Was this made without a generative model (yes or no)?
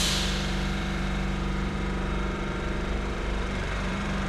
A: no